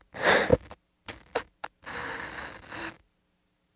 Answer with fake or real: real